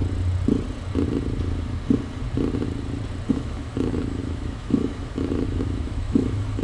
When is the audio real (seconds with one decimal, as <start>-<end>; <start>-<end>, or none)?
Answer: 0.0-3.3